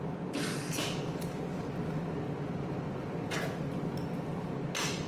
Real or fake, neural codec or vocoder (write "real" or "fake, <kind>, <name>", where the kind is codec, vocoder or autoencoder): real